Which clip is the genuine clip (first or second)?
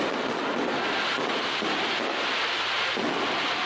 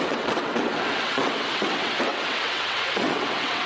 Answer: first